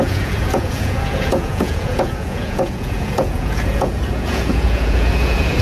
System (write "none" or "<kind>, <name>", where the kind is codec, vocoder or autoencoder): vocoder, Vocos